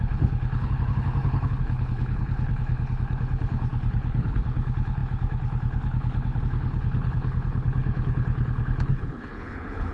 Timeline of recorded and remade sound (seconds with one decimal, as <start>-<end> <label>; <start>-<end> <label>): 0.0-9.9 remade